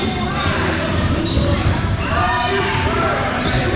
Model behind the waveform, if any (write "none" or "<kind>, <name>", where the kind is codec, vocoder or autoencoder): vocoder, BigVGAN v2